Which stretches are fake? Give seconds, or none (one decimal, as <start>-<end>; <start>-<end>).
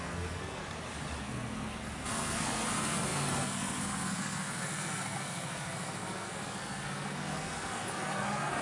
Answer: 0.0-0.6; 1.2-8.6